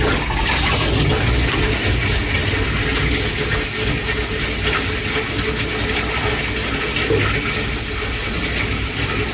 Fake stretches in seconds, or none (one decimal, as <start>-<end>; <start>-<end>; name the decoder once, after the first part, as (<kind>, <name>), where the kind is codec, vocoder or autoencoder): none